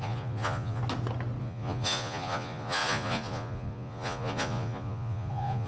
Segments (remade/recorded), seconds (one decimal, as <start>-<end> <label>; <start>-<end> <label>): 0.0-0.8 remade; 0.8-1.4 recorded; 1.4-5.7 remade